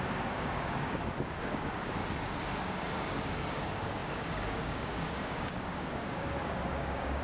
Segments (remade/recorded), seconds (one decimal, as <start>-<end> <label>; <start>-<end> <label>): 0.0-2.0 remade; 2.0-2.6 recorded; 2.6-7.2 remade